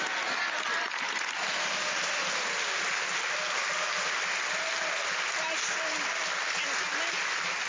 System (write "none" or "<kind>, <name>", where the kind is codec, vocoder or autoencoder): none